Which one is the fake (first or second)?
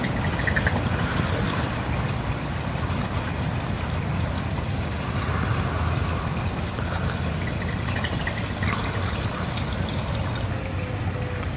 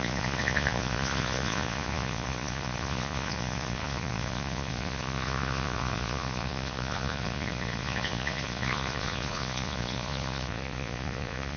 second